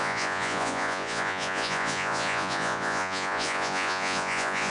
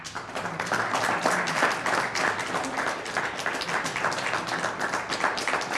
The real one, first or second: second